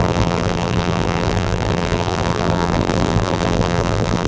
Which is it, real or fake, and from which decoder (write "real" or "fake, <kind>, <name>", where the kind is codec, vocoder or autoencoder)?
fake, vocoder, BigVGAN v2